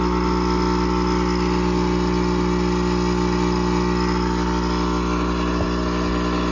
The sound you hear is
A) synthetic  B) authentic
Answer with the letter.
B